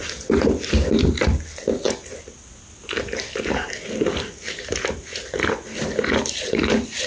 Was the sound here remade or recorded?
recorded